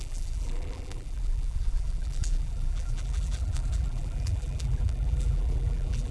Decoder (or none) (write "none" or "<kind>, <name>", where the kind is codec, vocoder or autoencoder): vocoder, BigVGAN v2